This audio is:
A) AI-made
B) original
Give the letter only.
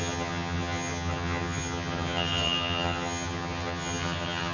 A